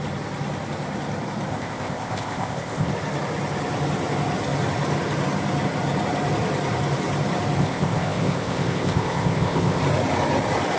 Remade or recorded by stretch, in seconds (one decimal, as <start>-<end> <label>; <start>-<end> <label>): 0.0-1.5 recorded; 1.5-2.9 remade; 2.9-7.6 recorded; 7.6-9.8 remade; 9.8-10.8 recorded